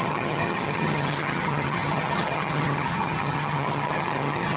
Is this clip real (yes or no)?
no